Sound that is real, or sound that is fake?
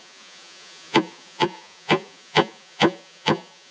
fake